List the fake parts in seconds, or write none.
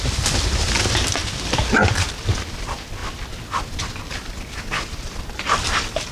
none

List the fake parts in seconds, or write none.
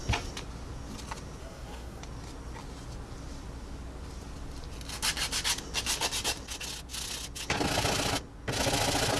1.4-2.0 (codec, SNAC)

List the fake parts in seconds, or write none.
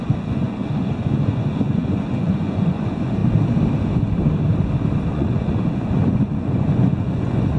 0.0-3.2 (vocoder, Vocos); 5.1-7.6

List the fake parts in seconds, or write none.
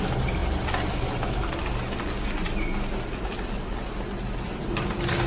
none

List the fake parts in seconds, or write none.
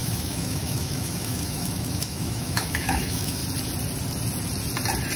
0.0-3.4 (autoencoder, DAC-VAE)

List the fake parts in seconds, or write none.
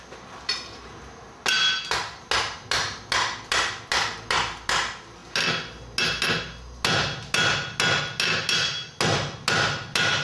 none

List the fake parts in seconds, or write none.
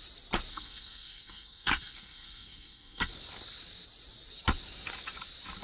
0.5-3.1 (codec, SNAC)